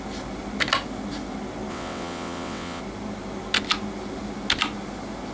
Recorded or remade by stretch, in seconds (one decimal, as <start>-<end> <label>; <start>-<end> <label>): 0.0-1.7 recorded; 1.7-2.8 remade; 2.8-5.3 recorded